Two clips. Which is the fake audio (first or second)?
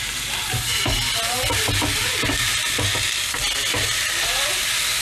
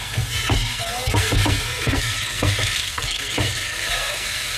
second